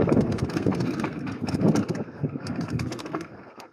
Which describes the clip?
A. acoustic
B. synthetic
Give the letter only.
B